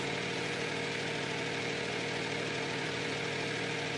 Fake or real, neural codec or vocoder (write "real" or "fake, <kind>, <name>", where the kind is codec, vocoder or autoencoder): fake, vocoder, Vocos